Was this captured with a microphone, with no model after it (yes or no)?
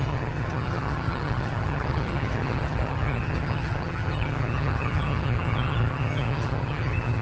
no